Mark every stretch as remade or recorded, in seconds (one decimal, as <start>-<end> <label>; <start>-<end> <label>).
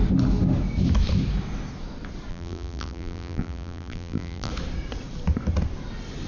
0.0-2.3 recorded; 2.3-4.5 remade; 4.5-6.3 recorded